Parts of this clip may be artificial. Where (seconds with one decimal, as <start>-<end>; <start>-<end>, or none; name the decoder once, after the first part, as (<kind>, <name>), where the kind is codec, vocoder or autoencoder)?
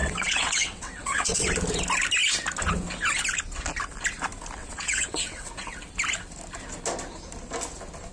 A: 0.0-1.5 (vocoder, WaveNeXt); 4.6-5.5